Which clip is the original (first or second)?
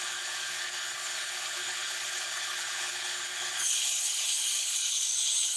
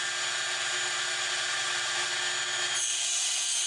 second